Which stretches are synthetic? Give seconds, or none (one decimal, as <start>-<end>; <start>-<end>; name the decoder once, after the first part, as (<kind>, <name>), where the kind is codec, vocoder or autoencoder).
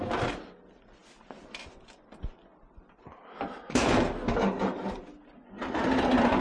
none